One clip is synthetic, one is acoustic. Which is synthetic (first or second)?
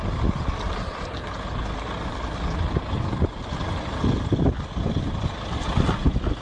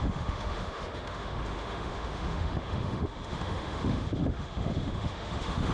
second